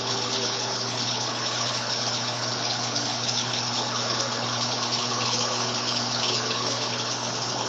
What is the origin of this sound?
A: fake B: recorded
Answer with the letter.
A